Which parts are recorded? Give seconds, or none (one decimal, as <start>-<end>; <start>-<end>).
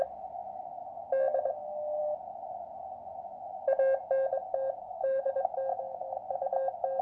0.0-4.8; 5.3-7.0